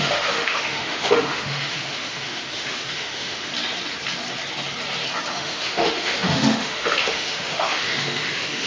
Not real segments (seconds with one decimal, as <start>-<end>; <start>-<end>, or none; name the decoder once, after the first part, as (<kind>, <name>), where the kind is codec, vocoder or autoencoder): 0.0-3.5 (autoencoder, DAC-VAE); 5.3-8.7